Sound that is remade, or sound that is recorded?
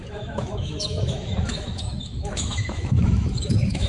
remade